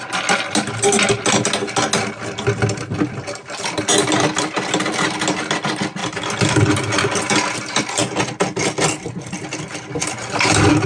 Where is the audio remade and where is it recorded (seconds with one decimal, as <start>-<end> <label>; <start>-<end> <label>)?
0.0-10.9 recorded